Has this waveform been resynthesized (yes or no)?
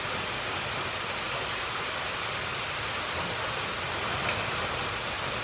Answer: no